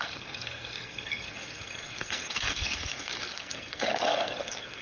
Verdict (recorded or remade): remade